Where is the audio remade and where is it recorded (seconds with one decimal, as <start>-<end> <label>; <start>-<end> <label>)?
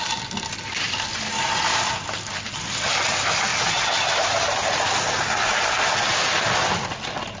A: 0.0-7.4 recorded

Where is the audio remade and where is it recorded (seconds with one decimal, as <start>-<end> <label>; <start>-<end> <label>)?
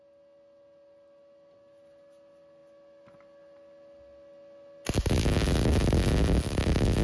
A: 0.0-7.0 recorded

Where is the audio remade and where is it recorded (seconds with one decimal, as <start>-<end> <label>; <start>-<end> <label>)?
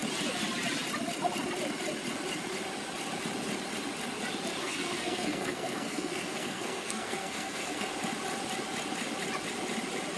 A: 0.0-4.6 recorded; 4.6-7.9 remade; 7.9-10.2 recorded